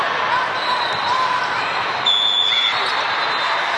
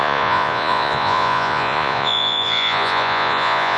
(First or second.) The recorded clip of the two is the first